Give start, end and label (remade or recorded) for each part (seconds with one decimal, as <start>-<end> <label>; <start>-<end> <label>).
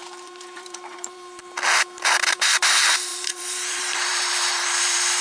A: 0.0-1.4 remade; 1.4-2.3 recorded; 2.3-5.2 remade